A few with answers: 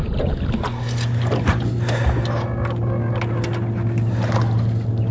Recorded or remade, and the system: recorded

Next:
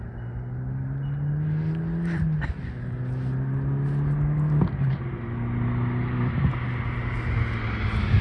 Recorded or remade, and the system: recorded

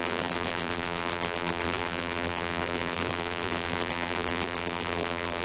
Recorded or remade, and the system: remade, vocoder, BigVGAN v2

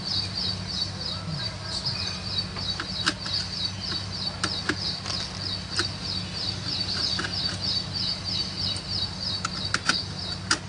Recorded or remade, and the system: recorded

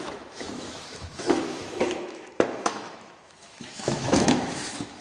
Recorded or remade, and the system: remade, autoencoder, DAC-VAE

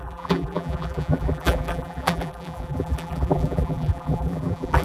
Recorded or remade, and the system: remade, vocoder, BigVGAN v2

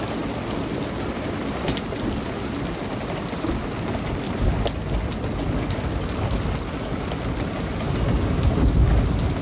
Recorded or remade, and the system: recorded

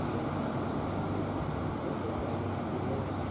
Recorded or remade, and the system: recorded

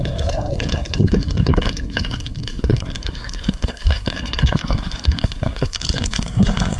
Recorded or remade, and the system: remade, codec, SNAC